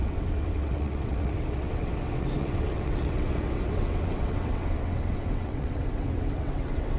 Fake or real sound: fake